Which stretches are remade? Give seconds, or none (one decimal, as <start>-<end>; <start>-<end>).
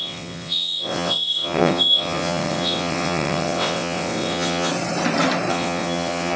0.0-4.7; 5.5-6.4